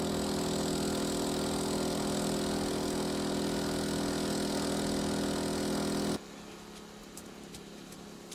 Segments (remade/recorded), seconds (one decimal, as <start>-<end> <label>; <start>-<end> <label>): 0.0-7.0 recorded; 7.0-8.3 remade